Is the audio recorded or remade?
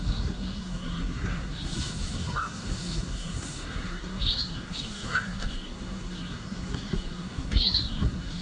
remade